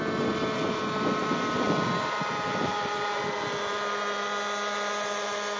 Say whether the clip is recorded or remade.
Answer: recorded